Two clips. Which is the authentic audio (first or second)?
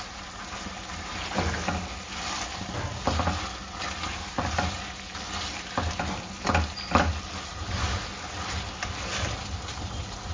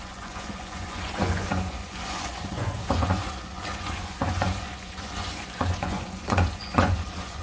first